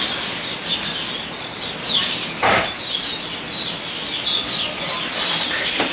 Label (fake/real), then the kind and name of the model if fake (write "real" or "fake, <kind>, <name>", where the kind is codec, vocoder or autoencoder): real